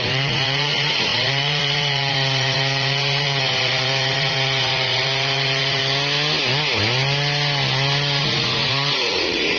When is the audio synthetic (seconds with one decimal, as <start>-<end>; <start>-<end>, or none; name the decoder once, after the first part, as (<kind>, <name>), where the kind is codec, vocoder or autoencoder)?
0.0-5.8 (vocoder, Vocos); 8.2-9.6